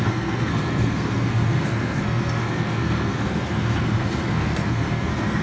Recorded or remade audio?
remade